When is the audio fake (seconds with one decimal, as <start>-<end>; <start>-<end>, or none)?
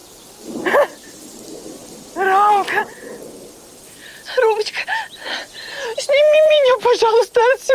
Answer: 1.1-7.7